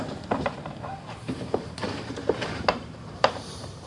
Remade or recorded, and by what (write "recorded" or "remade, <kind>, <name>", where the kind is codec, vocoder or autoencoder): remade, vocoder, BigVGAN v2